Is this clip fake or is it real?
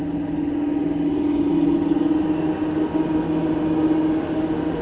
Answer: real